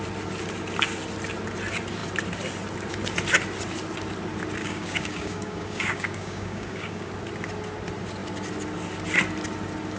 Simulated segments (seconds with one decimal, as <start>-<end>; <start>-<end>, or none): 4.6-7.1